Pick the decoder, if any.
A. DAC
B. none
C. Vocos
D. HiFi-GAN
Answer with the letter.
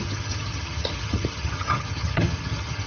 D